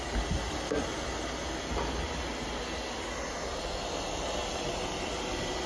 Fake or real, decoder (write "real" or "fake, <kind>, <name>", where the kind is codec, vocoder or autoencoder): real